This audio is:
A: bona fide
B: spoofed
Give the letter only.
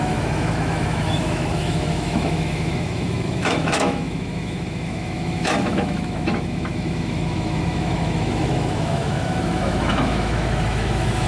B